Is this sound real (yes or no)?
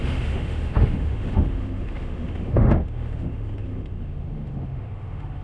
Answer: no